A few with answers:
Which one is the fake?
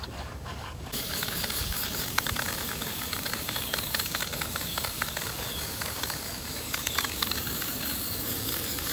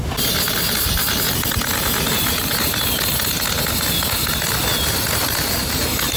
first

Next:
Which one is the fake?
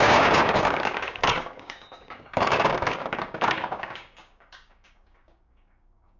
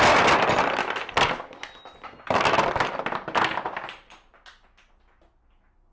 first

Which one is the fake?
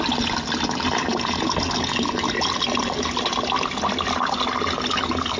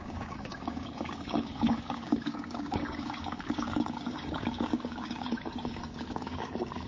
second